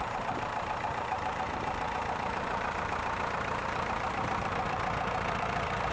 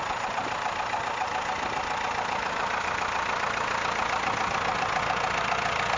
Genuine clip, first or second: second